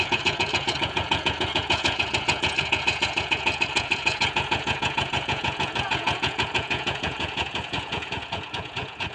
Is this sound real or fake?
fake